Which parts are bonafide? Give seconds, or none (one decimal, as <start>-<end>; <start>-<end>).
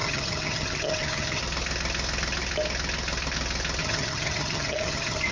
1.4-3.8